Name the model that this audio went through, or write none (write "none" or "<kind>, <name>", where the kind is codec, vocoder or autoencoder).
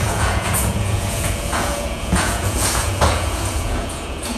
vocoder, Vocos